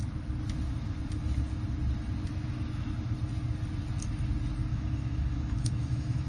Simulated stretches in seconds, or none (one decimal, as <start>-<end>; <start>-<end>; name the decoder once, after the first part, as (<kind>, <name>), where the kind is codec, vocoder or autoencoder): 4.7-6.3 (autoencoder, DAC-VAE)